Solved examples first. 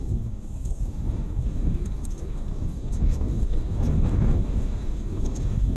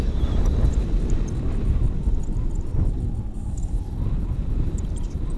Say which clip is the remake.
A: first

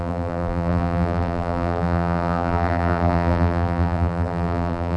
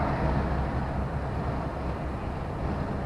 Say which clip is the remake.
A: first